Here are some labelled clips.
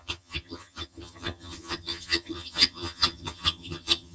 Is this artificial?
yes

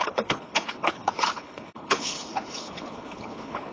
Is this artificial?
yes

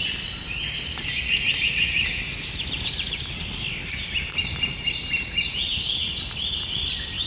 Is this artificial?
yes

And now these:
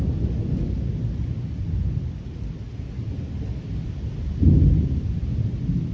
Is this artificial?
no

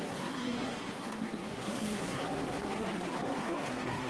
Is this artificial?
yes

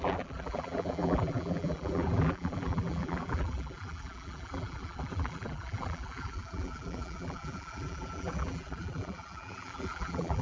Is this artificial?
yes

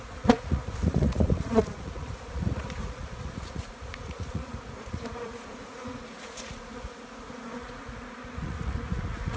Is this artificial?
yes